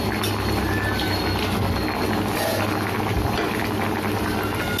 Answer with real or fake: real